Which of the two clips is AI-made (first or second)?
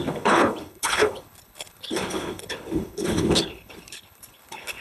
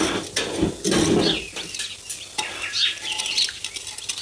first